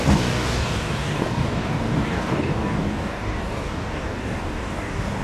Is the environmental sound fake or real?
fake